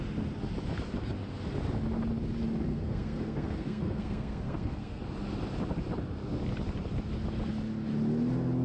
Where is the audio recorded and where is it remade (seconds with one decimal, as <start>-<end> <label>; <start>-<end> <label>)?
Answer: 0.0-2.7 recorded; 2.7-5.0 remade; 5.0-8.6 recorded

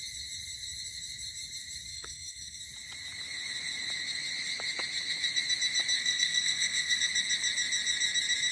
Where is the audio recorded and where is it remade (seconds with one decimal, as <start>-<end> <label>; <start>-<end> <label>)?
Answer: 0.0-1.9 recorded; 1.9-2.6 remade; 2.6-6.0 recorded; 6.0-7.0 remade; 7.0-8.5 recorded

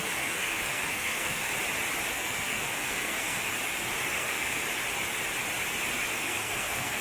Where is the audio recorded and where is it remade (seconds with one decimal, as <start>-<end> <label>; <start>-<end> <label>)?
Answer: 0.0-1.5 remade; 1.5-2.1 recorded; 2.1-3.5 remade; 3.5-4.1 recorded; 4.1-4.6 remade; 4.6-6.2 recorded; 6.2-7.0 remade

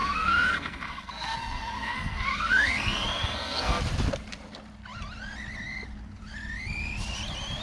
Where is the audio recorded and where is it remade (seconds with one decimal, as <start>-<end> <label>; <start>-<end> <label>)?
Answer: 0.0-3.8 remade; 3.8-7.6 recorded

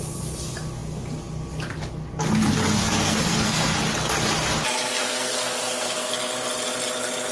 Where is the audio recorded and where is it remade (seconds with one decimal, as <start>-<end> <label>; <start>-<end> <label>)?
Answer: 0.0-2.8 recorded; 2.8-3.8 remade; 3.8-5.0 recorded; 5.0-6.1 remade; 6.1-7.3 recorded

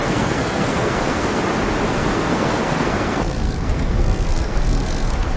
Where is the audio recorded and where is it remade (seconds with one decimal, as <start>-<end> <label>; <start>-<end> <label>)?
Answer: 0.0-1.4 remade; 1.4-1.9 recorded; 1.9-5.4 remade

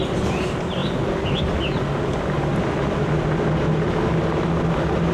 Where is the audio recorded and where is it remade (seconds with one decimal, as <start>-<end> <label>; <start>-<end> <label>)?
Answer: 0.0-5.1 recorded

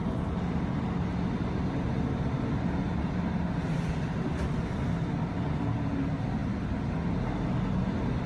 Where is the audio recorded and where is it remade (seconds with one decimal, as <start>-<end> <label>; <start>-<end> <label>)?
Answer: 0.0-8.3 recorded